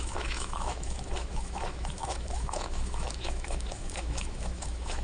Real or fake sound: fake